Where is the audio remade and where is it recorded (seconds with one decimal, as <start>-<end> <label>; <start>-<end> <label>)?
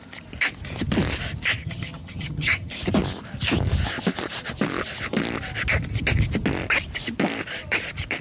0.0-1.6 recorded; 1.6-2.7 remade; 2.7-8.2 recorded